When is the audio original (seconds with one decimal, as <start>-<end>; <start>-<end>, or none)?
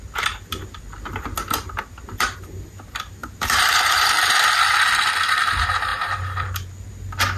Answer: 0.0-3.2; 4.4-5.9; 6.9-7.4